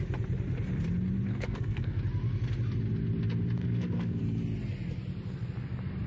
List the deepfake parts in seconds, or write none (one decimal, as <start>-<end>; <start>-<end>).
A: 1.3-2.0; 3.6-4.2

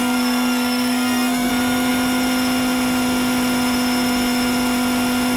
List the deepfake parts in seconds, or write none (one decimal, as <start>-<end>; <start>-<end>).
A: 0.0-1.5

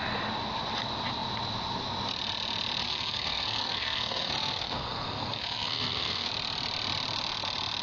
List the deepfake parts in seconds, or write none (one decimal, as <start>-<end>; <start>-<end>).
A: 2.8-6.3

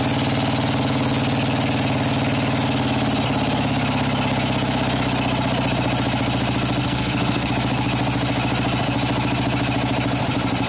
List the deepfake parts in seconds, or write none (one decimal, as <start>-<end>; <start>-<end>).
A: 6.8-7.5

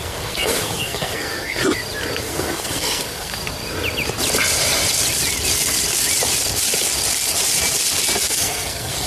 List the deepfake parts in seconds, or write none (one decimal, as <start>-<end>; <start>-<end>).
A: 0.0-1.6; 2.2-3.3; 8.2-9.1

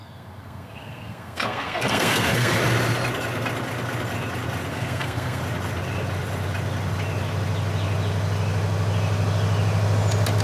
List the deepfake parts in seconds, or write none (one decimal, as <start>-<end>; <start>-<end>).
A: 0.0-2.6; 4.7-5.4

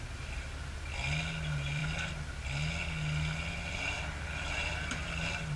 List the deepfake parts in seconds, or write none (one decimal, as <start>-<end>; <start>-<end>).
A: none

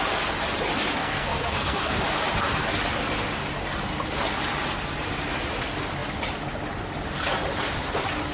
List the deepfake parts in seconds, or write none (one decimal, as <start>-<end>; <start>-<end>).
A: 1.0-2.0